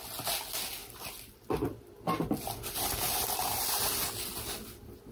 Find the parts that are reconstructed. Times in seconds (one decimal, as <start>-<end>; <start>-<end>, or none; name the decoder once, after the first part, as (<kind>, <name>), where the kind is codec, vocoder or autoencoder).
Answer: 0.8-3.9 (vocoder, BigVGAN v2)

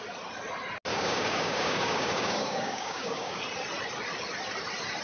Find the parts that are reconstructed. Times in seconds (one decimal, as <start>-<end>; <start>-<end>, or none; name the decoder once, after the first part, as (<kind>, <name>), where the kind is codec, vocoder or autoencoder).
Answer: 0.9-3.4 (codec, DAC)

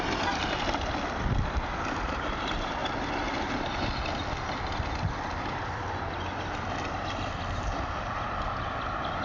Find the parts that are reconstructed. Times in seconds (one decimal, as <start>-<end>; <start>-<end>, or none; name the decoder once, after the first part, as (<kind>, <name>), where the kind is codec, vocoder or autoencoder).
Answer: none

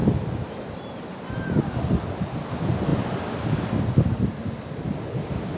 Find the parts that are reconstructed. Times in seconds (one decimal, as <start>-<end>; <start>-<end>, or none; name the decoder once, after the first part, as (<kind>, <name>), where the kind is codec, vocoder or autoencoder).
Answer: 0.0-1.6 (vocoder, BigVGAN v2)